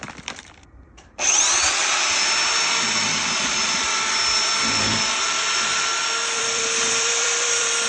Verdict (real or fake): fake